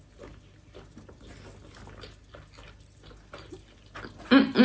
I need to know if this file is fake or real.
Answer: real